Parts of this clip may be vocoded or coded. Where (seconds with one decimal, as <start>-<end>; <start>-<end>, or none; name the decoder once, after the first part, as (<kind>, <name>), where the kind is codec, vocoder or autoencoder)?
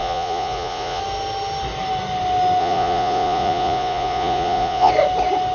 0.0-1.0 (vocoder, Vocos); 2.6-4.9